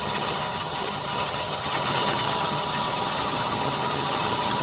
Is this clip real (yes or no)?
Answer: no